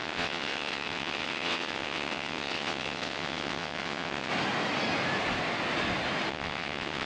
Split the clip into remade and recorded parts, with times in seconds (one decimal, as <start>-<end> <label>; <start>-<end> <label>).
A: 0.0-4.3 remade; 4.3-6.3 recorded; 6.3-7.1 remade

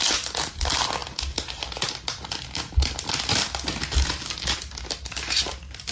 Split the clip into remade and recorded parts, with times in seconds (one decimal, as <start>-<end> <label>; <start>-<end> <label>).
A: 0.0-5.9 recorded

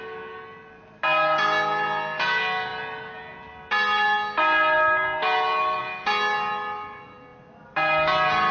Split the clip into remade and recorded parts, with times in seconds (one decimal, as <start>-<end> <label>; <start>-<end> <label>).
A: 0.0-8.5 recorded